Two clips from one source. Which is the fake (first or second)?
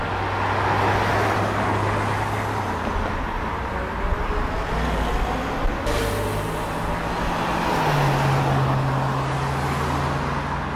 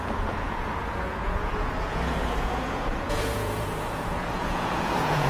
second